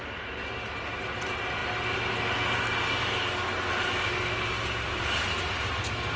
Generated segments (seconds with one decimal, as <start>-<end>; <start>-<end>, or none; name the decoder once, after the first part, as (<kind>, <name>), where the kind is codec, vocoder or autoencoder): none